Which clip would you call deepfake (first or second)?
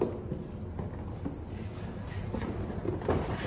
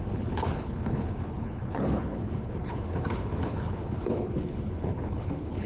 second